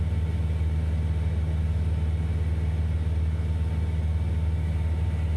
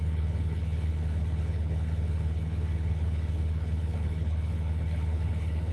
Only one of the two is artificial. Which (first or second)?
second